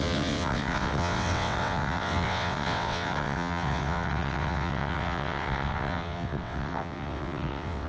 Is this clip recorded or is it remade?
remade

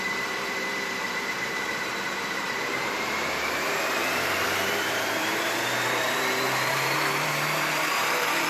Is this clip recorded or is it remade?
remade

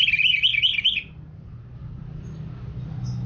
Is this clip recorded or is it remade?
recorded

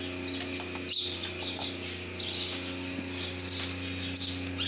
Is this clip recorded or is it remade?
recorded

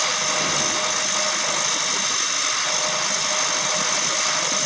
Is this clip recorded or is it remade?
recorded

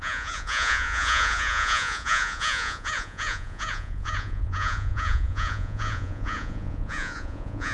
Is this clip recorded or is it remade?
remade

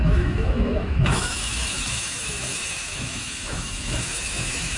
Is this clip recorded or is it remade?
remade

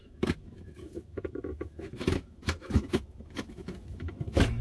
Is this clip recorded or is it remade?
remade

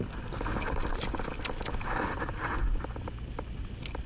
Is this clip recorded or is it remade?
recorded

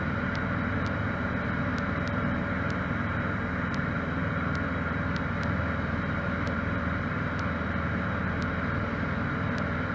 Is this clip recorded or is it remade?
recorded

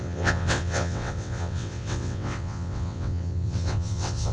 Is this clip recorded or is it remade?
remade